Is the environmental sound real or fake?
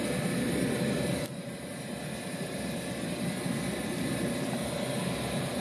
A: real